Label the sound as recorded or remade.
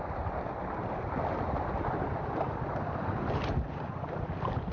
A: recorded